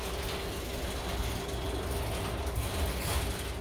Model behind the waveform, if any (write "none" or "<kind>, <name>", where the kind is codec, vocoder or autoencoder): none